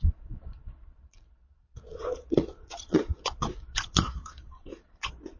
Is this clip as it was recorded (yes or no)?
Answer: no